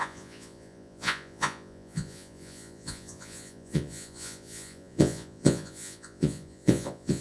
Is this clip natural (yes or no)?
no